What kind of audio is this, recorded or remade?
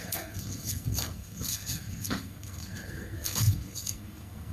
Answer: remade